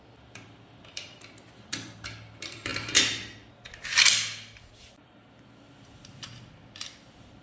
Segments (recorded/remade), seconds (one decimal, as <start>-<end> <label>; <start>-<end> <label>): 0.0-2.7 remade; 2.7-4.7 recorded; 4.7-7.4 remade